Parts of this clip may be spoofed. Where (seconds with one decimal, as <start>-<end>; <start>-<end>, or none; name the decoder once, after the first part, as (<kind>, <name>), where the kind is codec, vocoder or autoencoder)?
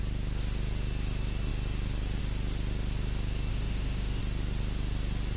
3.5-4.2 (autoencoder, DAC-VAE)